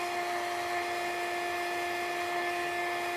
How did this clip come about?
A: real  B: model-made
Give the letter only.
A